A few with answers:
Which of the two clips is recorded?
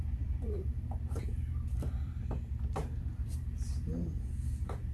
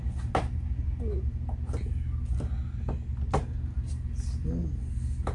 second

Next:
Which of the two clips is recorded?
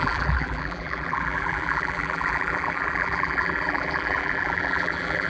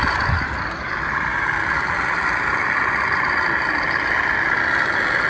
second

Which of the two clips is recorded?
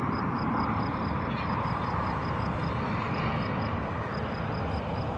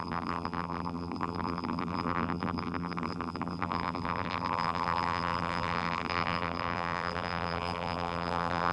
first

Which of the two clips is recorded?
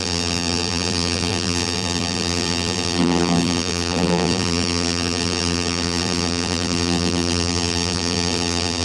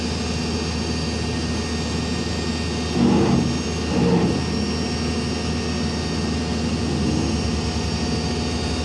second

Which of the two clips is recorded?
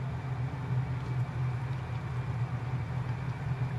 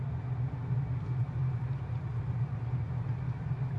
first